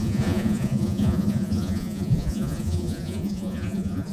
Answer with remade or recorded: remade